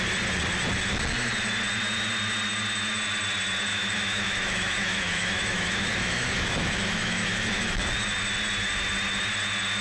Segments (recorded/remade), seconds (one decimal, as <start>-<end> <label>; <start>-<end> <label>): 0.0-3.7 recorded; 3.7-7.9 remade; 7.9-9.8 recorded